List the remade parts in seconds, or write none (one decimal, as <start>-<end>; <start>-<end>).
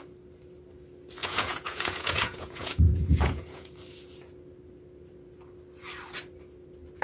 1.2-3.7